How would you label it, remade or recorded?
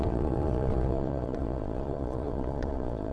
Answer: remade